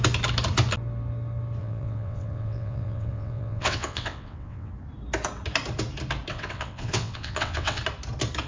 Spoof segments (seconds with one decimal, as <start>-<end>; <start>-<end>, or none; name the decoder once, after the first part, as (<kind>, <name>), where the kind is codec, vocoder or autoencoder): 1.6-4.7 (vocoder, WaveNeXt); 6.3-7.8